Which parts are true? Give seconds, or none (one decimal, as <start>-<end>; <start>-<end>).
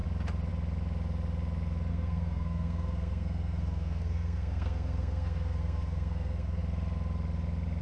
0.0-1.9; 6.6-7.8